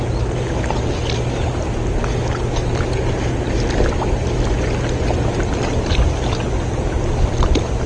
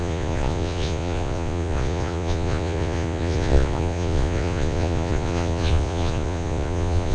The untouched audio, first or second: first